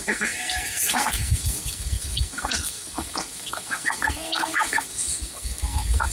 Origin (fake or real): fake